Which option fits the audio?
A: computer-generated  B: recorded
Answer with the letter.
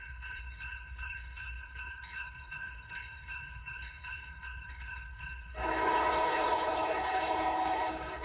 A